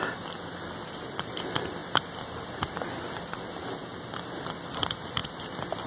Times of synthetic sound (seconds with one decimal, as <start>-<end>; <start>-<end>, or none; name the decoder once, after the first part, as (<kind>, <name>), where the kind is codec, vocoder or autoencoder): none